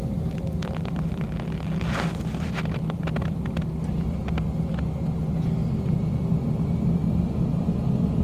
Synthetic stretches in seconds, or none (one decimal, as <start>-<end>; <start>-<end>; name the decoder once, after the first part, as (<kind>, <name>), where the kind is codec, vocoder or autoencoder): 0.6-5.1 (vocoder, BigVGAN v2); 7.0-8.2